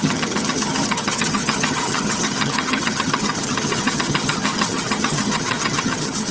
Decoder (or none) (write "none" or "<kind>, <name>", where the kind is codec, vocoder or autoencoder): vocoder, HiFi-GAN